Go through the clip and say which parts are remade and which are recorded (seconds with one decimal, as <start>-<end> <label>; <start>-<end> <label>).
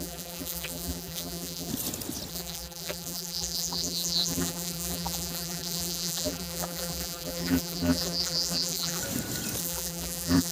0.0-1.7 remade; 1.7-2.3 recorded; 2.3-9.0 remade; 9.0-9.6 recorded; 9.6-10.5 remade